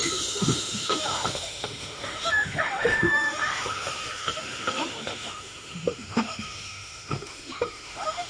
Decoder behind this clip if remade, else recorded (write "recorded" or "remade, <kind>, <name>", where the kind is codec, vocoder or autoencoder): remade, autoencoder, DAC-VAE